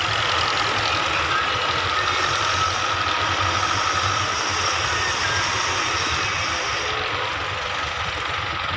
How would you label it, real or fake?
real